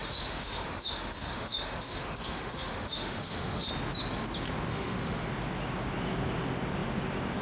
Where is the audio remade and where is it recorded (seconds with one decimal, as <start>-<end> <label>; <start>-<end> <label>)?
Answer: 0.0-3.7 remade; 3.7-4.7 recorded; 4.7-5.3 remade; 5.3-7.4 recorded